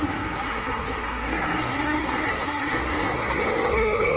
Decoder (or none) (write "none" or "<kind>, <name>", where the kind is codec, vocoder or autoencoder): codec, SNAC